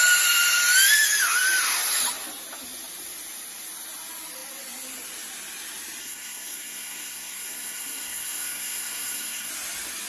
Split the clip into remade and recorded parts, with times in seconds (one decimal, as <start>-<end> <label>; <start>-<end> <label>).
0.0-6.0 recorded; 6.0-9.5 remade; 9.5-10.1 recorded